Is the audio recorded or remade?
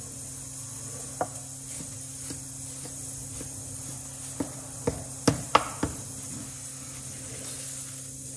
recorded